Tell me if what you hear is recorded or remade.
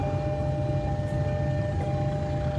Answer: recorded